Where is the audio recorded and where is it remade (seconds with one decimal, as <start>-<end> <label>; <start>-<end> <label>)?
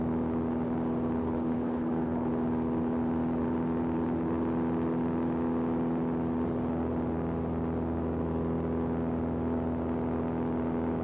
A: 0.0-1.2 recorded; 1.2-2.3 remade; 2.3-11.0 recorded